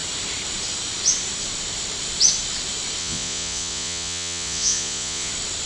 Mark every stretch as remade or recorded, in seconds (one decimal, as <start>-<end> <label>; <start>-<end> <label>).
0.0-3.0 recorded; 3.0-5.3 remade; 5.3-5.7 recorded